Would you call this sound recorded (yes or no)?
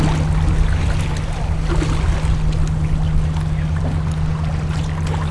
yes